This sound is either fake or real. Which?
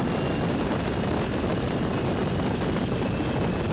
real